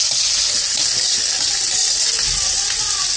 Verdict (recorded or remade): recorded